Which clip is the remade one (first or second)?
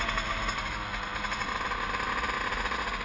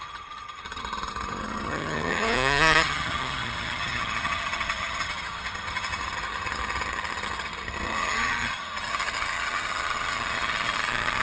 second